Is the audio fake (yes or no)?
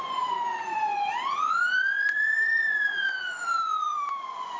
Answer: yes